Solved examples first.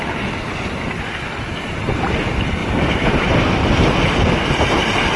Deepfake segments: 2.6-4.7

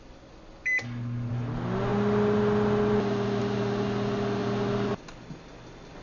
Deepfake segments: none

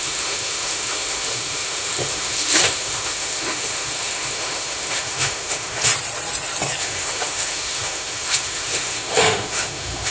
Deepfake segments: 0.0-5.9; 6.8-10.1

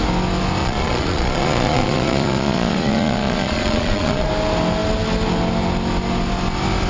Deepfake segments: 0.6-4.3